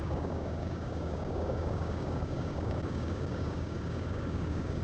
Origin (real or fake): fake